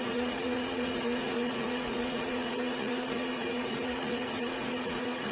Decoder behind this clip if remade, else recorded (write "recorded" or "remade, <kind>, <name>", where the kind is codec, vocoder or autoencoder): remade, vocoder, Vocos